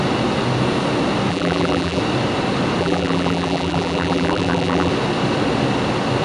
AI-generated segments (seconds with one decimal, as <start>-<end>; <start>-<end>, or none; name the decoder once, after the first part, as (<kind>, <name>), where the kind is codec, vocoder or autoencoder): 1.3-2.0 (vocoder, BigVGAN v2); 2.8-4.9